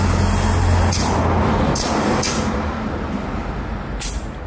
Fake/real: real